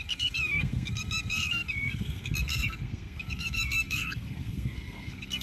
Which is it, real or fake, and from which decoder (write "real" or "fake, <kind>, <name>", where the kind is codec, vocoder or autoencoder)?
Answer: fake, codec, SNAC